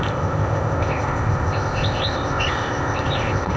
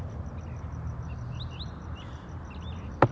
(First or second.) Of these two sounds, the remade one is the first